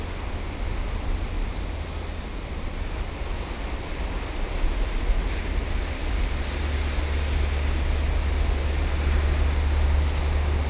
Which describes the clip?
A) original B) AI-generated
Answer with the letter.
A